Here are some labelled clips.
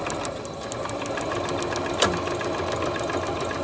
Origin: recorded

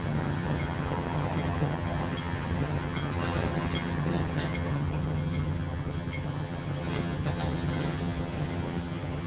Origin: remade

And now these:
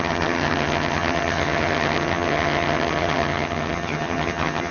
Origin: remade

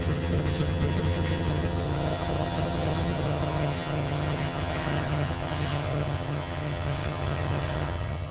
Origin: remade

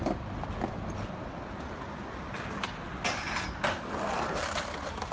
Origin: recorded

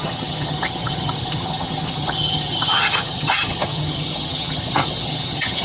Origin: remade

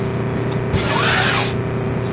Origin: recorded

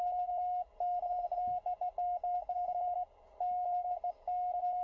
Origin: recorded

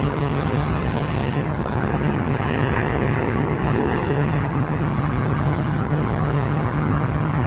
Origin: remade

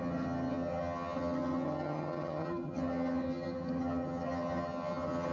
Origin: remade